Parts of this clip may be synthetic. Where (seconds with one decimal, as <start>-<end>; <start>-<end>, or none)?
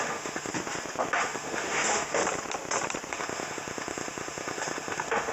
0.0-0.5; 1.2-2.2; 3.1-5.3